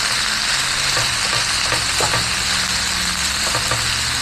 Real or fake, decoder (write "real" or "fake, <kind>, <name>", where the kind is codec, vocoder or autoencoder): real